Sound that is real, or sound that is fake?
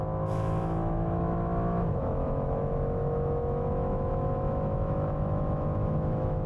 fake